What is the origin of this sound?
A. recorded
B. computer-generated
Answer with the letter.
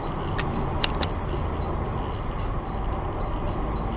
A